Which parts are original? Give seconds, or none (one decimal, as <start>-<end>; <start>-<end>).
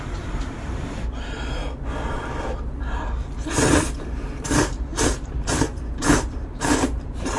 1.6-2.5